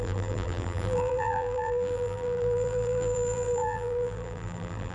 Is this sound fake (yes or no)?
yes